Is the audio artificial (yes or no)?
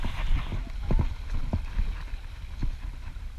no